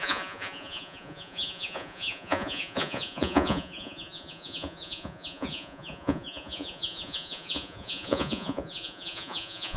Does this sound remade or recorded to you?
remade